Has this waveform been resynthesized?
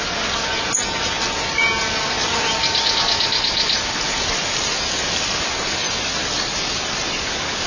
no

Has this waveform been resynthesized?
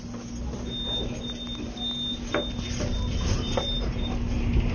no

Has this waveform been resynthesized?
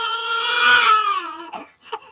yes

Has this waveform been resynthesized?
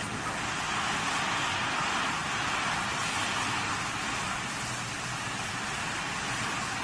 no